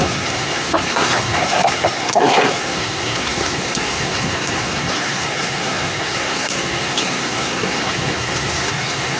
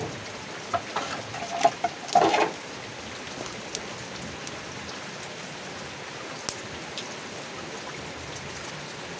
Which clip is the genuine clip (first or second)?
second